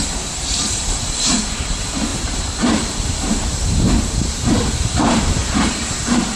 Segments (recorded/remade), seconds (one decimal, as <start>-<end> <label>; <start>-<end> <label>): 0.0-6.4 remade